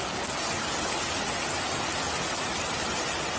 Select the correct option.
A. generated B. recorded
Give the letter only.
B